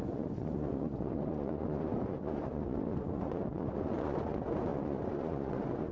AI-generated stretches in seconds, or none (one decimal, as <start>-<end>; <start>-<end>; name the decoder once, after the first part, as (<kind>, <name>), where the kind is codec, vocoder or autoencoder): 0.0-5.9 (vocoder, Vocos)